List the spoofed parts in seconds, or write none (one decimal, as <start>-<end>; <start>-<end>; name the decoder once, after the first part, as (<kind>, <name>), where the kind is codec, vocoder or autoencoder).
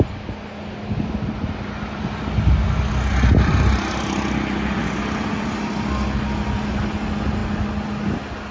none